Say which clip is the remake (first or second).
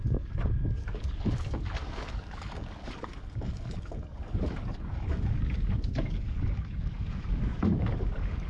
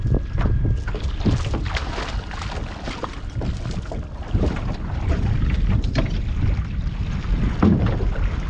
first